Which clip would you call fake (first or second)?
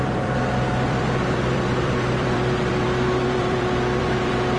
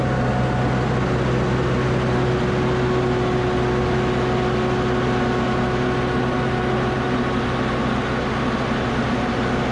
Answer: first